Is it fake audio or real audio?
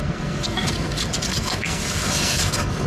fake